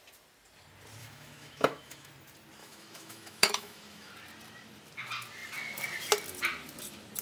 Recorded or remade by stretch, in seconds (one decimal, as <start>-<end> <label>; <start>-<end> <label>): 0.0-1.0 recorded; 1.0-2.1 remade; 2.1-2.6 recorded; 2.6-4.1 remade; 4.1-7.2 recorded